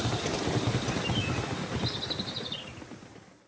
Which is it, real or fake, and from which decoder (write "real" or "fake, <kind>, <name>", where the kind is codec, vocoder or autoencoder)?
real